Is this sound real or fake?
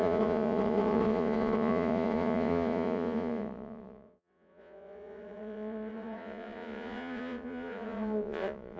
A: fake